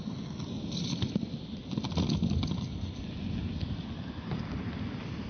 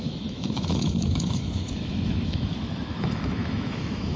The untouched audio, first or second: first